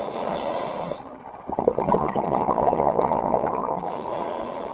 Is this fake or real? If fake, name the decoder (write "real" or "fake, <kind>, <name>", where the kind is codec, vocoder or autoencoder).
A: fake, vocoder, Vocos